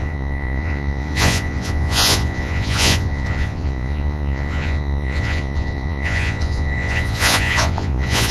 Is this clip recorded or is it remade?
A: remade